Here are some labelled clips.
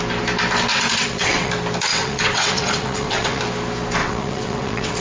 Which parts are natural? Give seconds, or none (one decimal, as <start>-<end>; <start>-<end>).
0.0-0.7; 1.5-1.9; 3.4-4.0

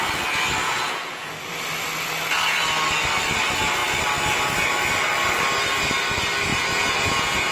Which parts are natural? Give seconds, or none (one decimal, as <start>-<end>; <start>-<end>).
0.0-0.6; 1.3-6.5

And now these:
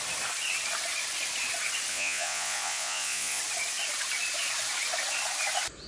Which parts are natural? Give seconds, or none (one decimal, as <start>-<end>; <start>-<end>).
0.0-1.9; 3.4-5.9

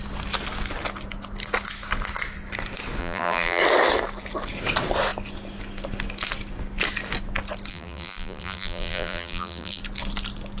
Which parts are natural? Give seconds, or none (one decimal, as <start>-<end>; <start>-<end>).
0.0-3.0; 3.6-7.7; 9.8-10.6

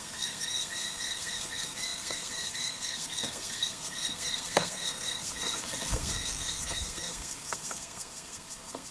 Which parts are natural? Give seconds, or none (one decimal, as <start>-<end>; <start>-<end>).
none